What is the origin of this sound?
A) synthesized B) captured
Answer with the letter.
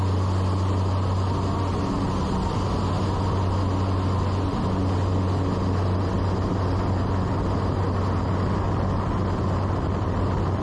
B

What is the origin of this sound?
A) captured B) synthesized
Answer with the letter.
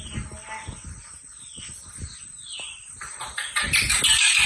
A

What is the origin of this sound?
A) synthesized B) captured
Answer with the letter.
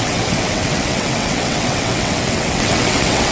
A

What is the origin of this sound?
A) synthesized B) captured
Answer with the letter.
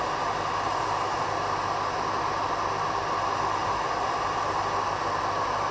B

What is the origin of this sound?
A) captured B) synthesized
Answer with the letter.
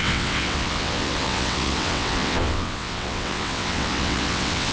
B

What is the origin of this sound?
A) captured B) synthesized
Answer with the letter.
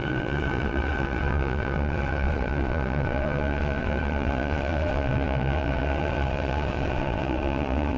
B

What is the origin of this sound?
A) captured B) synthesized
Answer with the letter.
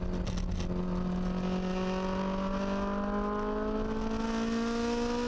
A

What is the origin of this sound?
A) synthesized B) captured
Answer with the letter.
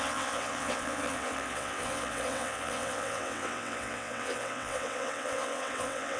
A